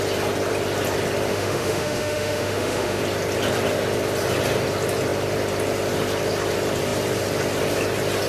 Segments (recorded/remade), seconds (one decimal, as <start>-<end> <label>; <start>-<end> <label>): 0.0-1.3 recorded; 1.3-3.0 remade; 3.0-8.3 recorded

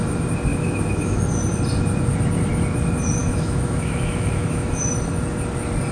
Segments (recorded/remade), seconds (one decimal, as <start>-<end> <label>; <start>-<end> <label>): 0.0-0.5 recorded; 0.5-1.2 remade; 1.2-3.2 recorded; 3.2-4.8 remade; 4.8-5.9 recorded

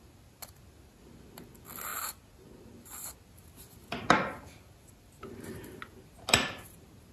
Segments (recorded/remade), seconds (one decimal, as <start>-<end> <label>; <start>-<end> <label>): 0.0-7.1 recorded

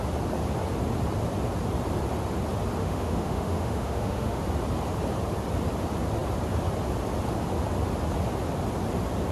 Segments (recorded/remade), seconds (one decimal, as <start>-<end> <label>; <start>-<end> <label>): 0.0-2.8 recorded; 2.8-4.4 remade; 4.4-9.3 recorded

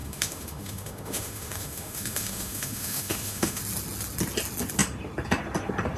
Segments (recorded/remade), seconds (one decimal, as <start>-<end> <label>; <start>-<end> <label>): 0.0-3.6 remade; 3.6-6.0 recorded